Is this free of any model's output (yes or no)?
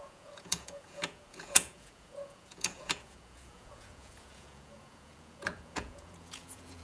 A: no